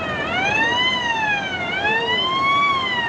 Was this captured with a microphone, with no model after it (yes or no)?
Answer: yes